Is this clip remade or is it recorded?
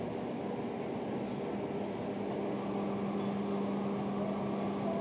recorded